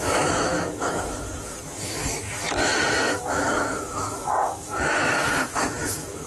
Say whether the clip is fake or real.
fake